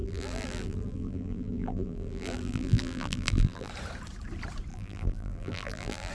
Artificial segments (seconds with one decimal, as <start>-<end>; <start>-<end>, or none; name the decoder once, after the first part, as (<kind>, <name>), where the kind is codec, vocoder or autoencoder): 0.0-3.7 (vocoder, BigVGAN v2); 4.7-6.1